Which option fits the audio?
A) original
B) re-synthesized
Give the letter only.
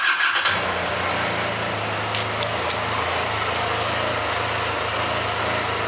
A